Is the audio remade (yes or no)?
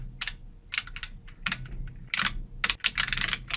no